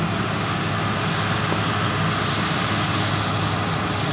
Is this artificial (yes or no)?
no